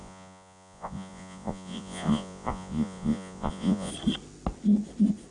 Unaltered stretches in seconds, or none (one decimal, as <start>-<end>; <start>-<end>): 3.9-5.3